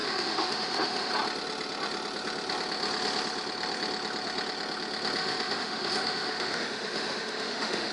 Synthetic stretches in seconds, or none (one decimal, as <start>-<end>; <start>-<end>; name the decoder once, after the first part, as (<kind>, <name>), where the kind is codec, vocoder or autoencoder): 0.0-1.1 (autoencoder, DAC-VAE); 5.2-7.9